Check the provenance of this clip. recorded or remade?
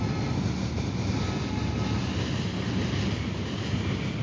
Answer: recorded